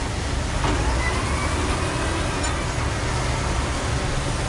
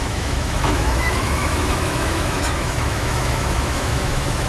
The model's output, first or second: second